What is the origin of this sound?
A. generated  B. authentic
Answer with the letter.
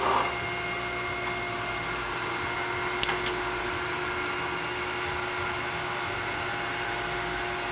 B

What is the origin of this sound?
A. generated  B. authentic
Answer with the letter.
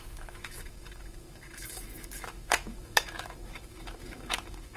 A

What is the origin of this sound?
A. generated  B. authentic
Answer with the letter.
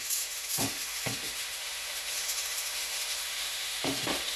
A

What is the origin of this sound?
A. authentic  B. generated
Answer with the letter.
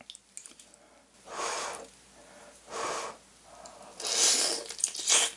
A